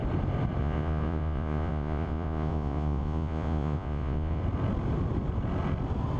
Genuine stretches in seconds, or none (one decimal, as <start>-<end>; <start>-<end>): 0.0-0.6; 4.4-6.2